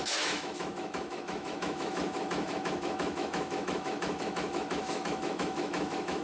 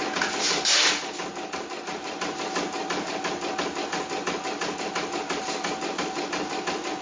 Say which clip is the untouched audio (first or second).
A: second